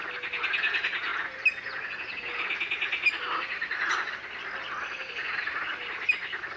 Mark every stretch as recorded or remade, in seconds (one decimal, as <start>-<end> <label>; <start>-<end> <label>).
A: 0.0-6.6 recorded